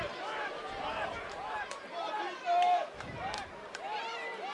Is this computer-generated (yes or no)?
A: yes